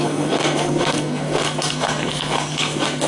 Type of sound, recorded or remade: remade